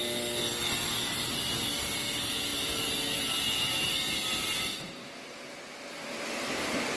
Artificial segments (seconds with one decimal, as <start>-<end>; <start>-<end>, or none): none